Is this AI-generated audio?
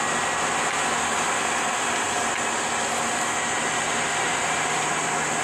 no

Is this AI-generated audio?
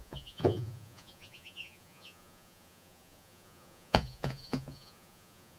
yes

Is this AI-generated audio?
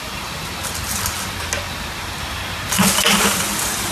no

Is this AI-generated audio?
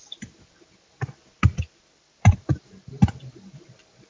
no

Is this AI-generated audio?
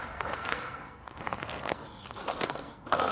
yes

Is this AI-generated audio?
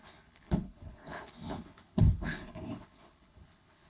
yes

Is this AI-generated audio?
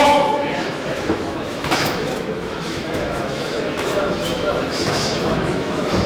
yes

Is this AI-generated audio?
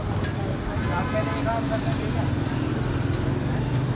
no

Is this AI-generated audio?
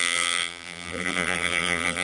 yes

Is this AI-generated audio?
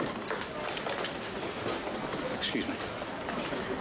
no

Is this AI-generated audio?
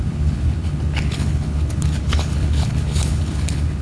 yes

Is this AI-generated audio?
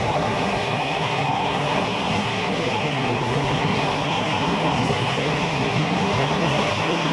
yes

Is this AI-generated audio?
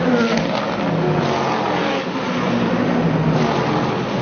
no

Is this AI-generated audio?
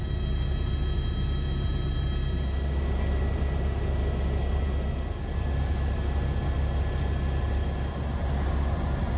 no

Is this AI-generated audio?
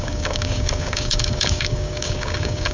yes